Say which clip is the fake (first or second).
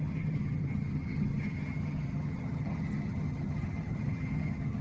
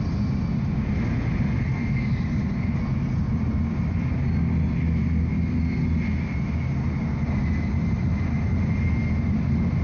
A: first